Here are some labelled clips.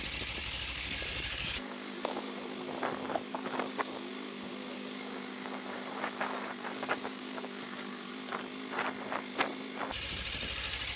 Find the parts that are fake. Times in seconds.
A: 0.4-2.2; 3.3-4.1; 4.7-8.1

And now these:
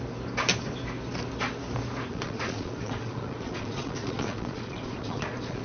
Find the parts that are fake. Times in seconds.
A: 2.1-5.6

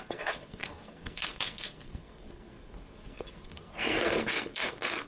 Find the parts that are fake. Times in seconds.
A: 0.0-5.1